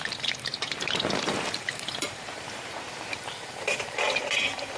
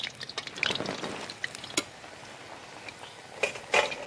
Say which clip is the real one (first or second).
second